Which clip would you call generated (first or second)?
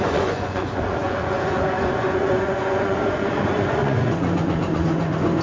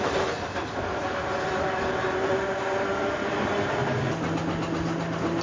first